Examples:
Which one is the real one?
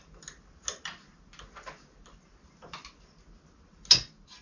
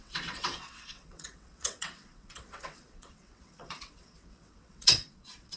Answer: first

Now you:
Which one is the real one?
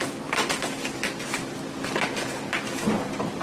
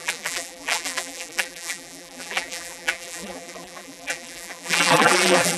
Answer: first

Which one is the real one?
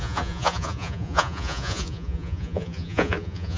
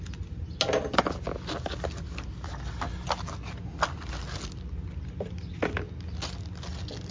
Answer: second